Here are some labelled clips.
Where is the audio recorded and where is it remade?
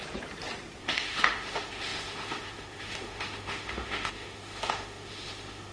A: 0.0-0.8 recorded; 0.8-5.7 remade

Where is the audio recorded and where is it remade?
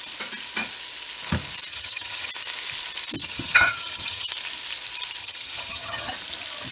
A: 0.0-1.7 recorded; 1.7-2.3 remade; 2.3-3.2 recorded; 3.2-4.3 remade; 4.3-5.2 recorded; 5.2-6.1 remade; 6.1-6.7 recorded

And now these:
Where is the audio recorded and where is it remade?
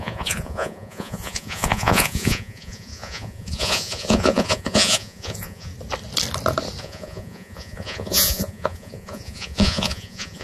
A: 0.0-5.7 remade; 5.7-6.8 recorded; 6.8-10.4 remade